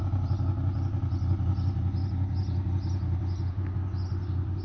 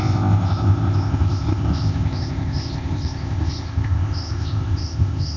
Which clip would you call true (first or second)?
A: first